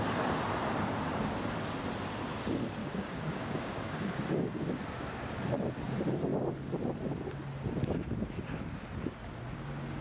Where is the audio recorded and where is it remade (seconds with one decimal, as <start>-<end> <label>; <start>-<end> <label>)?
0.0-2.8 recorded; 2.8-4.1 remade; 4.1-10.0 recorded